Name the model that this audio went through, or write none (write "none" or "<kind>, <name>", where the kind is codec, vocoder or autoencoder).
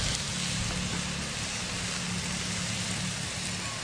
none